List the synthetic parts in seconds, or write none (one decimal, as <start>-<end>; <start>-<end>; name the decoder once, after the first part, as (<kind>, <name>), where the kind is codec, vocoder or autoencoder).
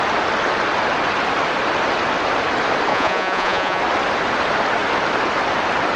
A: 2.9-3.8 (vocoder, Vocos)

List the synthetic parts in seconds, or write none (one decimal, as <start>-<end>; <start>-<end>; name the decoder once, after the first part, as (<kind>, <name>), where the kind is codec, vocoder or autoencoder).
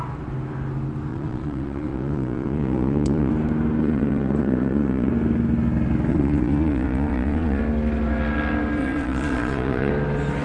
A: 1.1-3.3 (vocoder, Vocos); 3.8-5.1; 6.1-7.6; 8.8-9.9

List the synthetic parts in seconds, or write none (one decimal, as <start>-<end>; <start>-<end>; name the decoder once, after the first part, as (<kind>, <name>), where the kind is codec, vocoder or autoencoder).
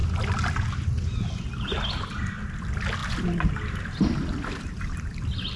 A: none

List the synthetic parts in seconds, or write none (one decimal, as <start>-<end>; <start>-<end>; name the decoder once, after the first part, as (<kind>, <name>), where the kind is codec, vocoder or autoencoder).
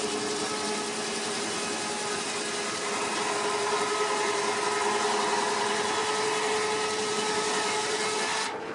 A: none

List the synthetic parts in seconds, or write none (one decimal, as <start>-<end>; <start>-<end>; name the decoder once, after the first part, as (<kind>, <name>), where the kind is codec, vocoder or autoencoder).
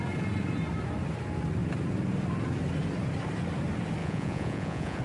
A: 4.0-5.0 (vocoder, Vocos)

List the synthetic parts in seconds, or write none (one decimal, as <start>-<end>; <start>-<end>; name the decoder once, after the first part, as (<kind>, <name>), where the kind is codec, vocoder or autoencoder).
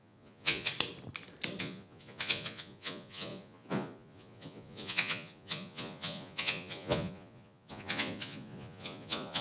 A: 0.0-0.7 (vocoder, Vocos); 1.6-9.4